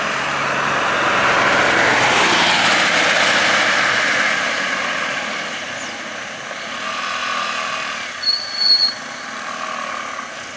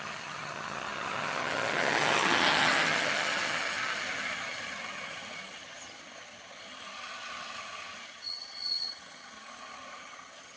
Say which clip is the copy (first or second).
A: second